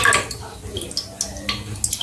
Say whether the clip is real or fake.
real